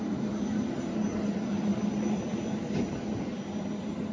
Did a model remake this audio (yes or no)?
no